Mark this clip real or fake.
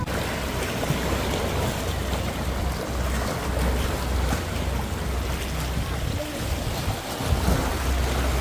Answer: real